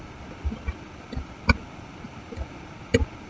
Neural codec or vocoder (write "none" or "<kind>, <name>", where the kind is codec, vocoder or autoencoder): none